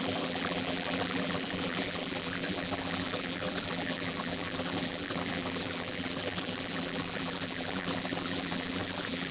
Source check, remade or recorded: remade